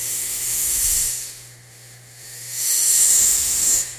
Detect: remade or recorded remade